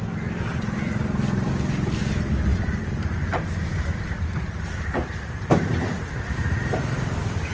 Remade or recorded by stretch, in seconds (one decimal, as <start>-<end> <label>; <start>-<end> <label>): 0.0-0.5 recorded; 0.5-1.5 remade; 1.5-2.5 recorded; 2.5-6.2 remade; 6.2-7.5 recorded